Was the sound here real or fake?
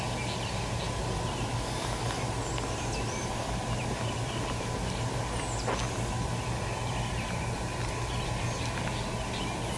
real